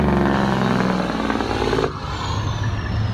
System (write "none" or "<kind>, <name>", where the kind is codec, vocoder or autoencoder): none